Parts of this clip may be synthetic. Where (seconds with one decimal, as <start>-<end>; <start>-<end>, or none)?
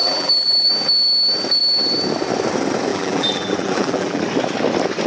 0.0-0.7; 2.9-4.2